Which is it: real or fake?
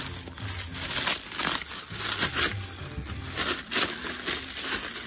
real